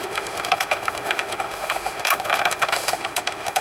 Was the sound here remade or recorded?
remade